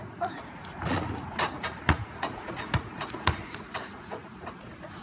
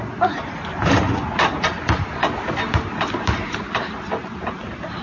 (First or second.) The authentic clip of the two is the second